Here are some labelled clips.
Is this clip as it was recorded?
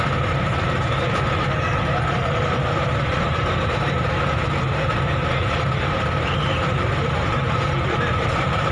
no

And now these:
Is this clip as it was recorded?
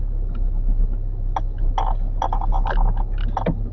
yes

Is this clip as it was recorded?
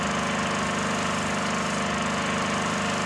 yes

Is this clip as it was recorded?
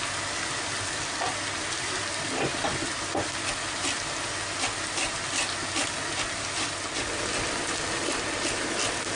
yes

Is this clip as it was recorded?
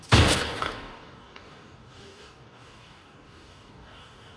no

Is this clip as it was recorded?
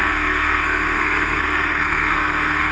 no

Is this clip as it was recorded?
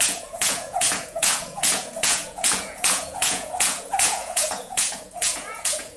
no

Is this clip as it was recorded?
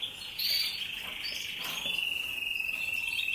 yes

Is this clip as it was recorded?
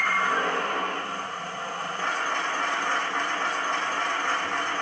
yes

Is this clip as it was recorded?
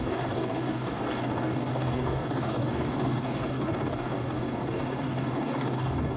no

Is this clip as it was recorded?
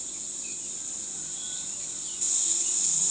yes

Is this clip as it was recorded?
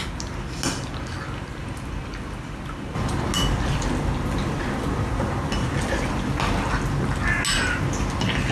yes